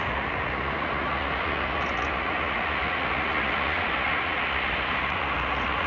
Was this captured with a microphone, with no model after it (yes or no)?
no